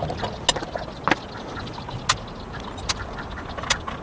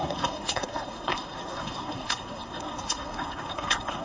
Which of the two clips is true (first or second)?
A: first